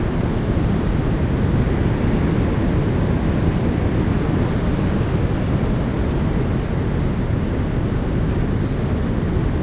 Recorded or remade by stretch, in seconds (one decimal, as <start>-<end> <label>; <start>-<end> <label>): 0.0-9.6 recorded